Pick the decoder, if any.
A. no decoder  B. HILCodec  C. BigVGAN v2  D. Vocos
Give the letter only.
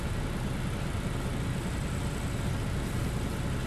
A